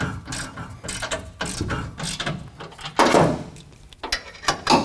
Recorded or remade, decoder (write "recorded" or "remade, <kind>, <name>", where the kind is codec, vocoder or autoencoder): recorded